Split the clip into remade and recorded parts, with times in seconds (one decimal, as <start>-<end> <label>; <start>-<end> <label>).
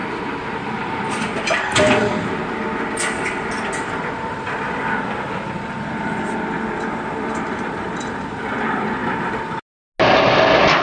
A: 0.0-0.5 recorded; 0.5-9.0 remade; 9.0-10.8 recorded